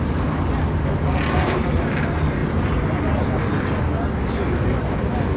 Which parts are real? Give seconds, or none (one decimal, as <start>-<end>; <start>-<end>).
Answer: 0.0-5.4